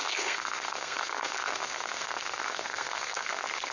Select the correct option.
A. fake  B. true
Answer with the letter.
A